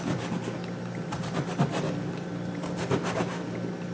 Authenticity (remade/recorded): recorded